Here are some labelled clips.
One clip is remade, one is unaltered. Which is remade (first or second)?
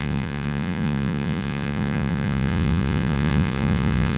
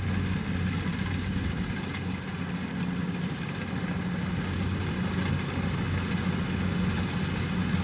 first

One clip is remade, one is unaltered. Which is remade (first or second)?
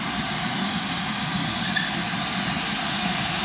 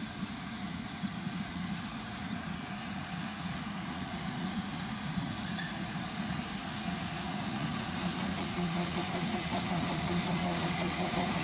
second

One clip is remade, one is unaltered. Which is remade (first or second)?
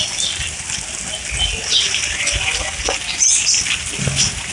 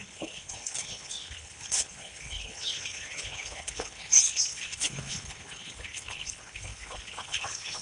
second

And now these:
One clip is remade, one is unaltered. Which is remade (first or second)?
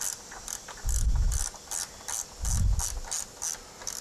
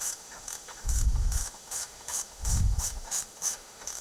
second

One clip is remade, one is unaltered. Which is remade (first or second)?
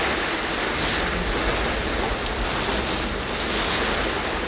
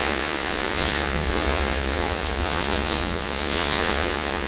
second